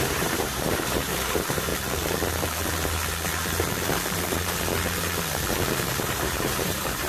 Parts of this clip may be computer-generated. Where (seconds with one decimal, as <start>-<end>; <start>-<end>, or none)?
0.0-1.7; 5.9-7.1

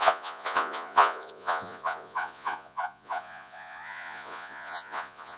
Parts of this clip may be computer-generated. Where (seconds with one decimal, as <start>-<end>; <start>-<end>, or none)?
0.0-5.4

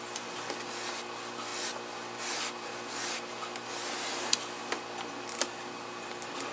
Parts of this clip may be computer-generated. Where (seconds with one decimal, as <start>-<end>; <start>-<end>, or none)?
none

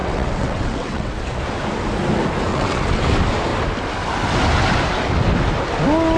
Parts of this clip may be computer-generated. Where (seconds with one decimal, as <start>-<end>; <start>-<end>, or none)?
0.0-1.1; 2.5-3.0

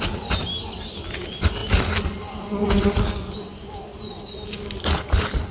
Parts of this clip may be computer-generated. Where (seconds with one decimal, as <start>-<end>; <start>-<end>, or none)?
none